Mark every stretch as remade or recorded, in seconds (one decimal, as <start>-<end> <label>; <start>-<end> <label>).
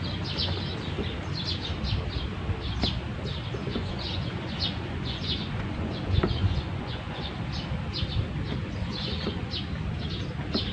0.0-3.6 recorded; 3.6-7.3 remade; 7.3-8.6 recorded; 8.6-9.5 remade; 9.5-10.7 recorded